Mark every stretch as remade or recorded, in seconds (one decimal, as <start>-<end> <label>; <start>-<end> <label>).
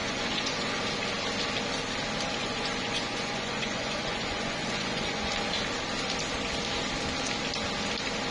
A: 0.0-0.8 remade; 0.8-2.4 recorded; 2.4-5.3 remade; 5.3-8.3 recorded